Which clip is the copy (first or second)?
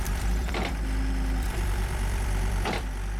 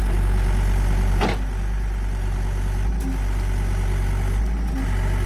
first